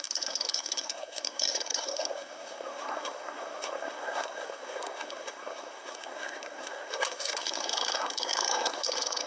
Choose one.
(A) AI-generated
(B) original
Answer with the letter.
A